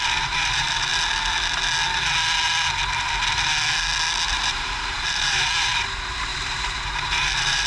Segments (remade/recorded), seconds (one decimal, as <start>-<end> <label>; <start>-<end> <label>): 0.0-0.9 remade; 0.9-4.3 recorded; 4.3-7.7 remade